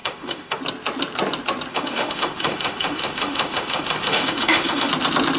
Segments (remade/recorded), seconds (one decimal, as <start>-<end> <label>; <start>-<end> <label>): 0.0-0.6 remade; 0.6-1.7 recorded; 1.7-4.9 remade; 4.9-5.4 recorded